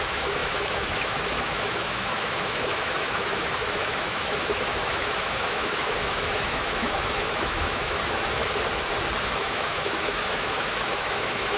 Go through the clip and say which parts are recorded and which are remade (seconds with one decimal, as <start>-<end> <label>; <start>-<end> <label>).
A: 0.0-8.4 remade; 8.4-9.2 recorded; 9.2-11.6 remade